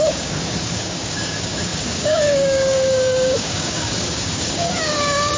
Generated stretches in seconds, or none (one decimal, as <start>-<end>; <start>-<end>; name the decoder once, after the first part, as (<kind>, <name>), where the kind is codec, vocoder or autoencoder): 0.0-5.4 (codec, DAC)